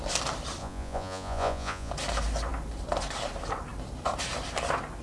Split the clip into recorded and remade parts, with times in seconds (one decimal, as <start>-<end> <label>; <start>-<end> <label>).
0.0-0.6 recorded; 0.6-1.9 remade; 1.9-5.0 recorded